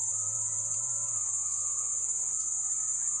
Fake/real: fake